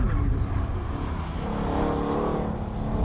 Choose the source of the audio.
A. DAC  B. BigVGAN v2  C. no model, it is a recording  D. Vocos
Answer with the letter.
C